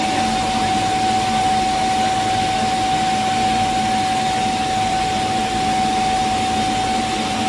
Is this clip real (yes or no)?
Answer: yes